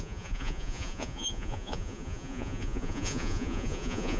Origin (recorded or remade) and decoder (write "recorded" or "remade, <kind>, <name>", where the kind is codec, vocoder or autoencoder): remade, vocoder, Vocos